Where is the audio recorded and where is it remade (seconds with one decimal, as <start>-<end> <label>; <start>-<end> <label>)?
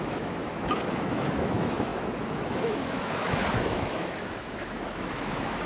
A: 0.0-5.7 remade